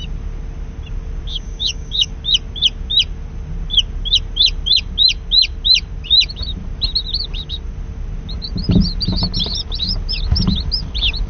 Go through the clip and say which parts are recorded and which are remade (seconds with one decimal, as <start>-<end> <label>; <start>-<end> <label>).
0.0-1.3 recorded; 1.3-2.1 remade; 2.1-11.3 recorded